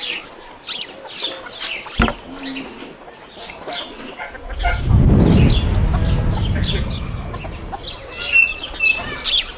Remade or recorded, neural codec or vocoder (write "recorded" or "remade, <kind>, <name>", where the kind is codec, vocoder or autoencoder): recorded